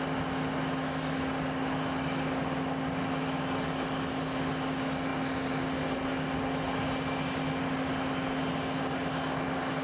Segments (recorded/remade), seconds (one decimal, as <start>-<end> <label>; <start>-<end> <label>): 0.0-9.8 recorded